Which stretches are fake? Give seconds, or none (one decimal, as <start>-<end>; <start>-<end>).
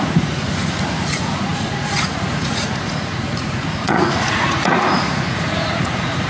0.0-6.3